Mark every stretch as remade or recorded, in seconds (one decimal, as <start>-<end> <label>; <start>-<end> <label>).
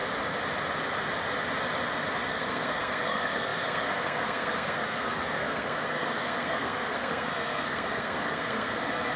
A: 0.0-2.3 recorded; 2.3-9.2 remade